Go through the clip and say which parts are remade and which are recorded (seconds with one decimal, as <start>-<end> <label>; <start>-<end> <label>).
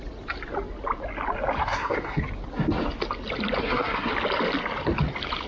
0.0-1.6 recorded; 1.6-2.2 remade; 2.2-3.6 recorded; 3.6-4.1 remade; 4.1-5.5 recorded